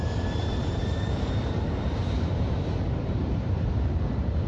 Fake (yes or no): yes